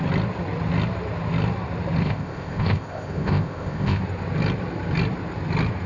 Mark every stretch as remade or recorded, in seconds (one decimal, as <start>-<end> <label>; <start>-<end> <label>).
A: 0.0-2.0 recorded; 2.0-4.0 remade; 4.0-5.9 recorded